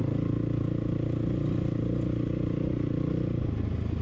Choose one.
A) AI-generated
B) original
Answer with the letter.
B